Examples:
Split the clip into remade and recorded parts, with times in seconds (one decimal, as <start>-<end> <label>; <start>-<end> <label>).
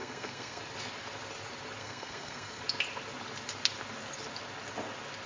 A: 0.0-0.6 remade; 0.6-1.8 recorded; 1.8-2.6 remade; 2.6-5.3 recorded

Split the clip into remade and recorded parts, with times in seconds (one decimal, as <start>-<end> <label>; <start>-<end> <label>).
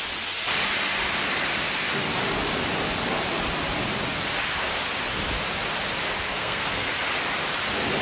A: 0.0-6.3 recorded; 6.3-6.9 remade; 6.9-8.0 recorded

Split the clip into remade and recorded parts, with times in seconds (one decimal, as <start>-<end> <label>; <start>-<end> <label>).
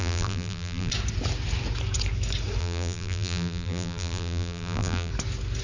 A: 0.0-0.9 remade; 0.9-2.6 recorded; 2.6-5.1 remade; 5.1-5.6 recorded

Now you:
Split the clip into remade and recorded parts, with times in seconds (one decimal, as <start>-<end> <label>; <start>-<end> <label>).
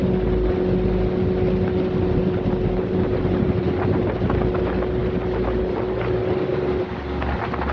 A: 0.0-7.7 recorded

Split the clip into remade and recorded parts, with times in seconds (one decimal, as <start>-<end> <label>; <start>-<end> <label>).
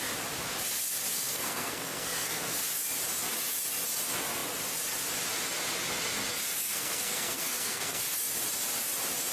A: 0.0-1.1 recorded; 1.1-2.6 remade; 2.6-6.6 recorded; 6.6-8.0 remade; 8.0-9.3 recorded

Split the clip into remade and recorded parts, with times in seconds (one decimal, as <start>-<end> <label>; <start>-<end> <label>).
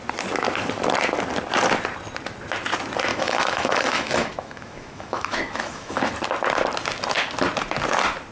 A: 0.0-3.1 recorded; 3.1-6.1 remade; 6.1-8.3 recorded